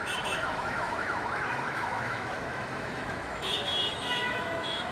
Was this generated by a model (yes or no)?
yes